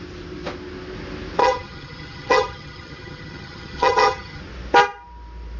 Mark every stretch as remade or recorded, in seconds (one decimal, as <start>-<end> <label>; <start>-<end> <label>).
0.0-1.4 recorded; 1.4-4.4 remade; 4.4-5.6 recorded